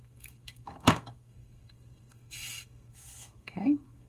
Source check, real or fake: fake